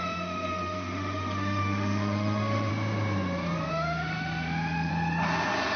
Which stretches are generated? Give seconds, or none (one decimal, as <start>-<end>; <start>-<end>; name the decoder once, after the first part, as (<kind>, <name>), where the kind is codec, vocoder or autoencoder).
0.0-2.7 (autoencoder, DAC-VAE); 3.7-4.9